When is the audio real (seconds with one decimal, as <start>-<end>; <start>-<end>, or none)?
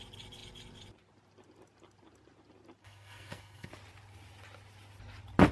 0.0-2.8; 3.7-5.5